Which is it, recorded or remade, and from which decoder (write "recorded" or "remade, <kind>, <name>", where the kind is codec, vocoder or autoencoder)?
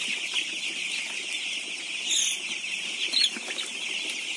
recorded